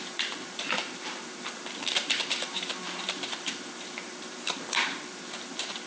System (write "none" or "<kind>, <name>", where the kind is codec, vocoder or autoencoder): vocoder, BigVGAN v2